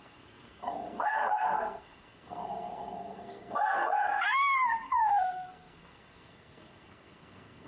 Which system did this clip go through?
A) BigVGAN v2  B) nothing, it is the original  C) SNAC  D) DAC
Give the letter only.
C